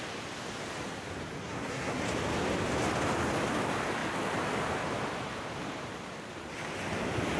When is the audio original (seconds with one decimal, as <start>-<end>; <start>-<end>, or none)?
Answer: 0.0-1.4; 2.0-7.4